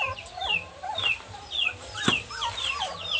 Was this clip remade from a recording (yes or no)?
no